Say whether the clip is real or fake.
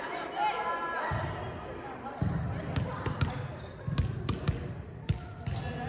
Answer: real